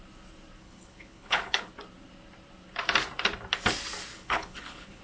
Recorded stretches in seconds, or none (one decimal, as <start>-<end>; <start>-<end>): 0.0-0.6; 1.7-4.1